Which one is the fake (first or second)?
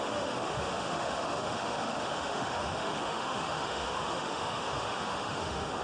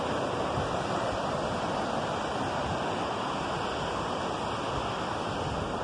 first